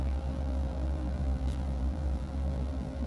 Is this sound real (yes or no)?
no